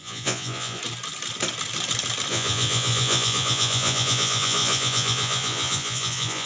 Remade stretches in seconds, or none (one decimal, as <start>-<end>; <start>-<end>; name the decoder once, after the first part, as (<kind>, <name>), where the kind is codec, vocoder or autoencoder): 0.0-0.8 (vocoder, Vocos); 2.3-6.5